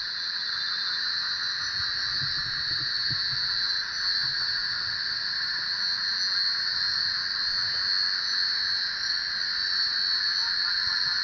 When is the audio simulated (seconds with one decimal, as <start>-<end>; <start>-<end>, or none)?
none